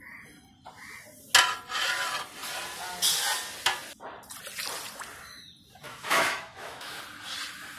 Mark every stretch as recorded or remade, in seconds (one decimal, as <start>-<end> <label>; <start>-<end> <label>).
0.0-5.9 recorded; 5.9-7.0 remade; 7.0-7.8 recorded